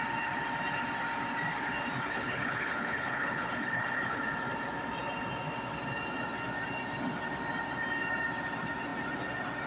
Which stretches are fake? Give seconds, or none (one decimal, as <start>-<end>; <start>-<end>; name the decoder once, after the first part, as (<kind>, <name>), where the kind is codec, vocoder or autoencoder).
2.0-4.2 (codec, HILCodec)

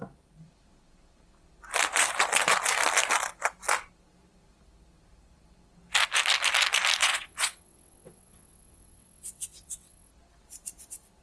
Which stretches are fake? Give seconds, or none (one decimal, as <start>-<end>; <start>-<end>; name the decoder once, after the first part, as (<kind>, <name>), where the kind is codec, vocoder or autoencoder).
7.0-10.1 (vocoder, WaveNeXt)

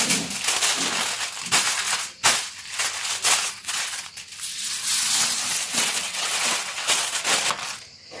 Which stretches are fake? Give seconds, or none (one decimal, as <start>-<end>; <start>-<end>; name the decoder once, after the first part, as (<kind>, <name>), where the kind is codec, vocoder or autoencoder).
3.4-4.1 (vocoder, WaveNeXt); 4.5-7.2

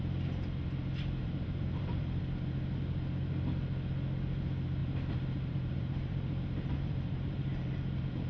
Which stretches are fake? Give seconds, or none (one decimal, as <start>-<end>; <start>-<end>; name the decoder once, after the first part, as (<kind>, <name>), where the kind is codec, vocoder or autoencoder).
1.2-2.2 (vocoder, BigVGAN v2); 4.8-8.3

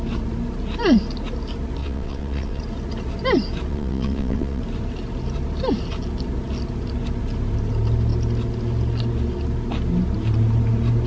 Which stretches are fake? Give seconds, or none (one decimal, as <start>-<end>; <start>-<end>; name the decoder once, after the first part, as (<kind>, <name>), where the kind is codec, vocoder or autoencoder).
1.8-2.6 (vocoder, WaveNeXt); 3.7-4.6

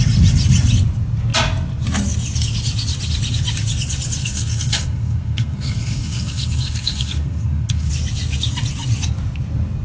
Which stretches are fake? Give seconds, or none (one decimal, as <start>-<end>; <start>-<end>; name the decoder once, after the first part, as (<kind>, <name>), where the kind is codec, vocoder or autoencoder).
4.2-7.9 (codec, SNAC)